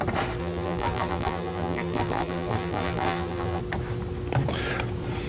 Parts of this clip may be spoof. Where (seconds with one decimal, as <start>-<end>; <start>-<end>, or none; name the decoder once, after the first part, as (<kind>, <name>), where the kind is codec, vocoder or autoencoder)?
0.4-3.6 (vocoder, BigVGAN v2)